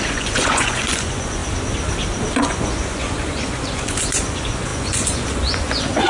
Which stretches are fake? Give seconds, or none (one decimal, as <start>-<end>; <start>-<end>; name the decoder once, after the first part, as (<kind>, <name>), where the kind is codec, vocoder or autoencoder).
0.0-1.4 (vocoder, Vocos); 2.4-6.1